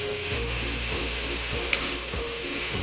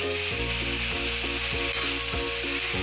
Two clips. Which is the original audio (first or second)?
second